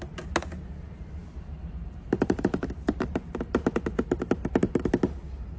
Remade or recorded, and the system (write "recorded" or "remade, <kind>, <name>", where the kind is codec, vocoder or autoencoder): remade, vocoder, BigVGAN v2